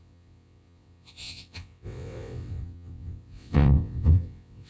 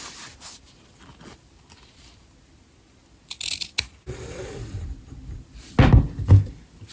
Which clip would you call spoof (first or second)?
first